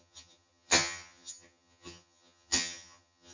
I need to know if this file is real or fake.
fake